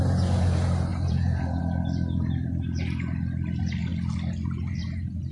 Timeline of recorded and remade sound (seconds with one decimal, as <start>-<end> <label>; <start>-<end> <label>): 0.0-0.9 recorded; 0.9-1.6 remade; 1.6-5.3 recorded